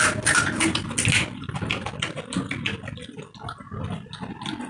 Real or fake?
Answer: real